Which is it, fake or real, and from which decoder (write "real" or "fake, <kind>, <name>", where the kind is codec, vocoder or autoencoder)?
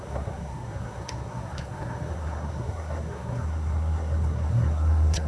fake, codec, SNAC